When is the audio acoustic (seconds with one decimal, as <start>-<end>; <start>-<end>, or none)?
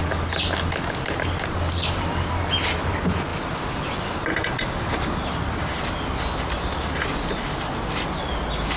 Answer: 0.0-8.8